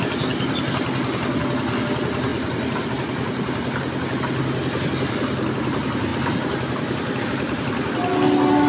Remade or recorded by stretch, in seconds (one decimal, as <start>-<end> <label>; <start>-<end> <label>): 0.0-8.7 recorded